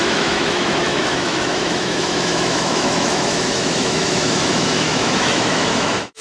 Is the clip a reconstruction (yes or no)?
yes